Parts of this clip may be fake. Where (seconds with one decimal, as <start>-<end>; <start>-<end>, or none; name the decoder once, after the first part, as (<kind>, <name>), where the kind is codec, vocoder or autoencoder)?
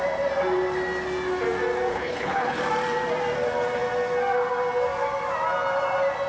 1.9-2.6 (codec, HILCodec)